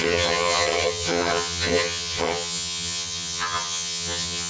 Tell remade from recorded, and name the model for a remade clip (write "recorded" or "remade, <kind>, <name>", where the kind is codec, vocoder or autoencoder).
remade, vocoder, HiFi-GAN